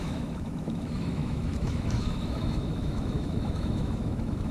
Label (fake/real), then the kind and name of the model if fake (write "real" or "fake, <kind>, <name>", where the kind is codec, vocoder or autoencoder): fake, autoencoder, DAC-VAE